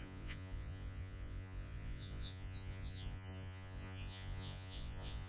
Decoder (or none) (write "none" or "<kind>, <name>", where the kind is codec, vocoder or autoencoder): vocoder, Vocos